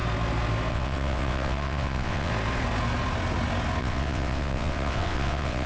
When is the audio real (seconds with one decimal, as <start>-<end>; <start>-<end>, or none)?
0.0-0.7; 2.3-3.8